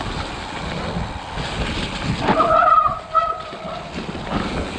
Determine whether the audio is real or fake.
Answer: real